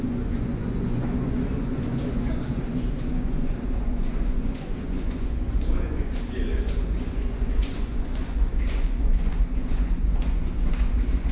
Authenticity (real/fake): fake